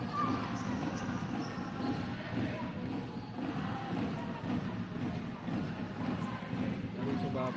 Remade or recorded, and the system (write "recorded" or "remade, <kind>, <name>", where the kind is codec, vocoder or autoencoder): recorded